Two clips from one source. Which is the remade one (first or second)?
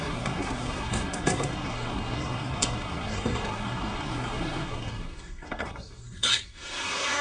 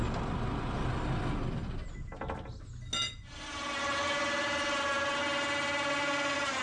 first